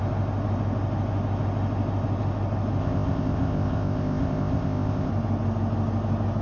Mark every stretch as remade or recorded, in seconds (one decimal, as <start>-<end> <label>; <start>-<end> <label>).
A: 0.0-2.8 recorded; 2.8-5.1 remade; 5.1-6.4 recorded